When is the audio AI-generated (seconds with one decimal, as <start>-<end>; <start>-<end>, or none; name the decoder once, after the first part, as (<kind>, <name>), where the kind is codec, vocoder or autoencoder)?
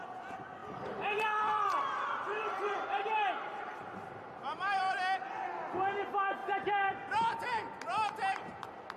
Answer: 0.6-4.9 (vocoder, BigVGAN v2); 6.4-6.9